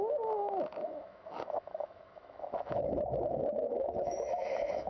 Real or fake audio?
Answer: fake